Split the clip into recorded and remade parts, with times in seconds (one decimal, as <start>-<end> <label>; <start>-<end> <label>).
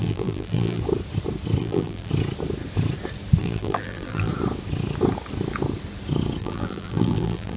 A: 0.0-0.8 remade; 0.8-1.6 recorded; 1.6-2.1 remade; 2.1-3.4 recorded; 3.4-4.3 remade; 4.3-6.4 recorded; 6.4-7.6 remade